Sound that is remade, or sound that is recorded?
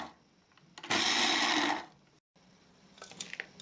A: recorded